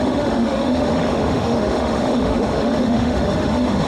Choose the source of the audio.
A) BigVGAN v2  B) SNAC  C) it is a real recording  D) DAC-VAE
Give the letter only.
D